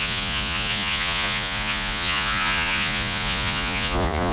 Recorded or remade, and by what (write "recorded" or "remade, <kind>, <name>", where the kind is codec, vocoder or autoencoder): remade, vocoder, Vocos